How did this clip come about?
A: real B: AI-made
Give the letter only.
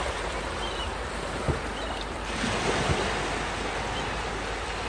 A